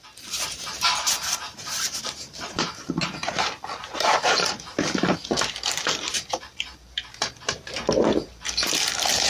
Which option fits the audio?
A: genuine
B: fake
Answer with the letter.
B